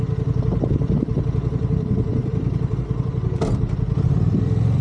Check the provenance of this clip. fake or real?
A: fake